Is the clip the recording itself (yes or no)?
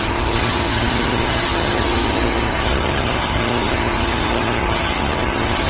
no